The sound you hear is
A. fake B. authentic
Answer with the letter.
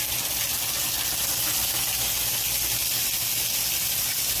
B